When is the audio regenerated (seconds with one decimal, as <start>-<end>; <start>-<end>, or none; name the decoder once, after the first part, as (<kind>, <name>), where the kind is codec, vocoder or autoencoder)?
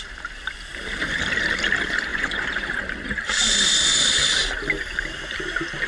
2.1-2.8 (vocoder, Vocos)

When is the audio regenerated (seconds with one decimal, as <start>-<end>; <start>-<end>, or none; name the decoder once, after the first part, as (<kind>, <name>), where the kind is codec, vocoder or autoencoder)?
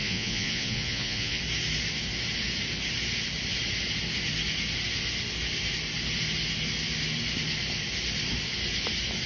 0.0-1.4 (vocoder, Vocos)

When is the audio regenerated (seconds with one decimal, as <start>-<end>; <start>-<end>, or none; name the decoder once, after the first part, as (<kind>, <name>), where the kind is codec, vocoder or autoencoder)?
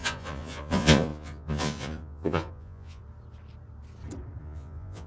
0.0-3.0 (vocoder, Vocos); 4.4-5.1